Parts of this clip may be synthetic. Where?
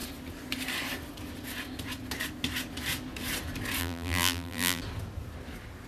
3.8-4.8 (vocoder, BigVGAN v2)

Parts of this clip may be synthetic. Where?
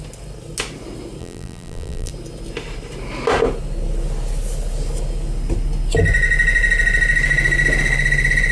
1.2-2.1 (vocoder, BigVGAN v2)